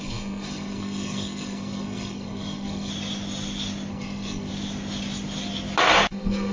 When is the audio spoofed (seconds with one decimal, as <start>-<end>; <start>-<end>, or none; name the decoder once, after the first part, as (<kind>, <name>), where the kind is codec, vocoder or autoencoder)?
0.0-2.9 (codec, SNAC); 3.9-4.5; 6.1-6.5

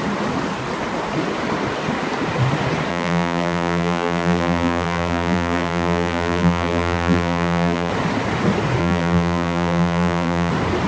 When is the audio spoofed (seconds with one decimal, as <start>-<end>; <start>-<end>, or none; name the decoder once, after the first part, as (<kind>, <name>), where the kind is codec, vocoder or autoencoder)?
2.9-7.9 (vocoder, BigVGAN v2); 8.8-10.5